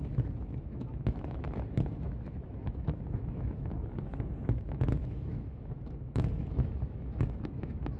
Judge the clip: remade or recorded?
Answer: remade